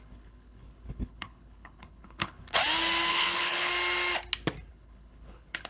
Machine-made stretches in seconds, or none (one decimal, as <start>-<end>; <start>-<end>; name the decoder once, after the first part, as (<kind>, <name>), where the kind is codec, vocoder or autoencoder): 0.0-2.6 (codec, HILCodec); 3.1-3.7; 4.7-5.7